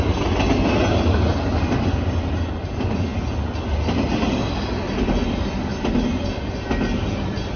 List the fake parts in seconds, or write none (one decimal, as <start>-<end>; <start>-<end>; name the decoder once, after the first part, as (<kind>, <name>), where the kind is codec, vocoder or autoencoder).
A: none